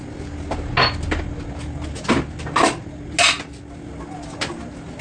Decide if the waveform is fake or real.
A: real